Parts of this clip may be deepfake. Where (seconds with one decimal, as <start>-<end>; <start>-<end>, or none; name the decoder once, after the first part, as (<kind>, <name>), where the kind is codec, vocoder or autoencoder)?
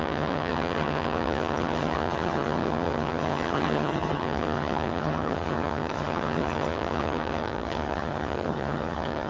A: 0.0-9.3 (vocoder, HiFi-GAN)